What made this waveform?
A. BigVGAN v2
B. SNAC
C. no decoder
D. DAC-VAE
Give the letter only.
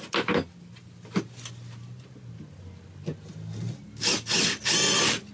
C